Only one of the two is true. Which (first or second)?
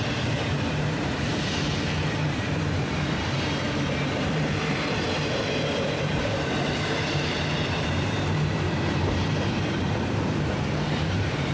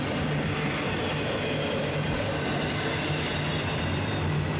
second